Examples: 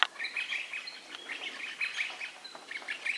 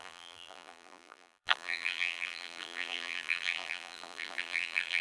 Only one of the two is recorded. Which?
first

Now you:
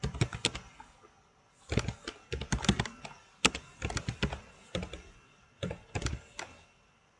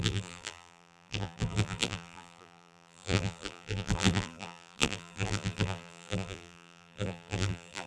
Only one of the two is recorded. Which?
first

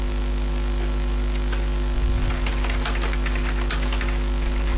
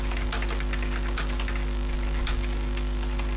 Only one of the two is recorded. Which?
first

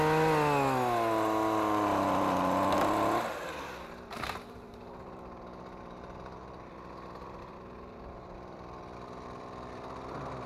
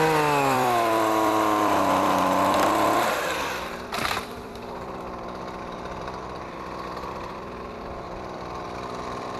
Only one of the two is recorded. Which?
first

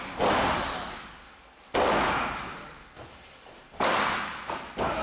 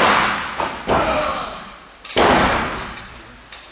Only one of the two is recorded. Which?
second